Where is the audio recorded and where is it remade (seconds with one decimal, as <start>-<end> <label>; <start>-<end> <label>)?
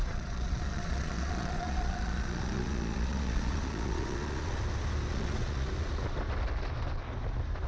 0.0-4.6 remade; 4.6-5.1 recorded; 5.1-5.7 remade; 5.7-7.7 recorded